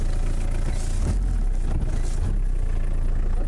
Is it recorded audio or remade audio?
recorded